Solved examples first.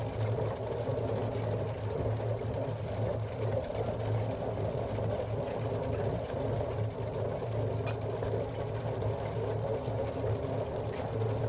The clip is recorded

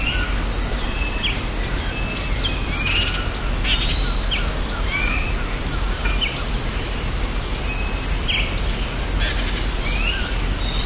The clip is recorded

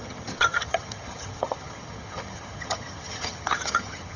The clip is remade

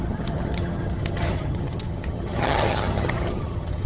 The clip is remade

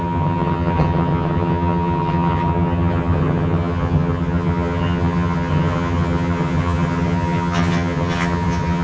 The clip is remade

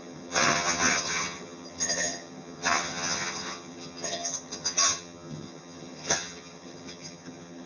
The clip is remade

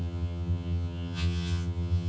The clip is remade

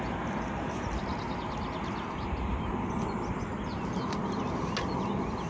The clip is recorded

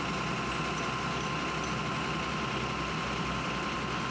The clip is recorded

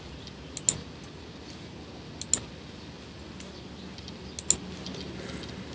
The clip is recorded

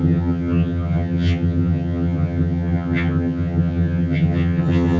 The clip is remade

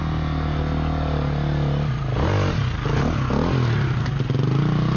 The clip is recorded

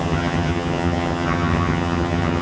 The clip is remade